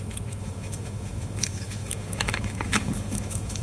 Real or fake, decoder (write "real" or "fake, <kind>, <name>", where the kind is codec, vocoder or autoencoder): fake, autoencoder, DAC-VAE